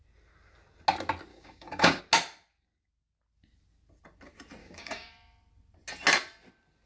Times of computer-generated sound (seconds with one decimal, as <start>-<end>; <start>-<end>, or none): 1.3-2.0; 4.6-5.1